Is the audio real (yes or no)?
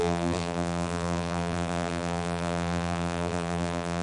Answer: no